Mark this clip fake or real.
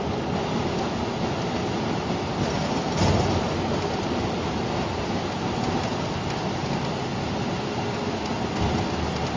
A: real